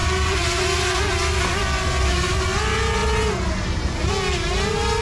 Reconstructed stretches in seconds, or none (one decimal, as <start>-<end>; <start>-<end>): none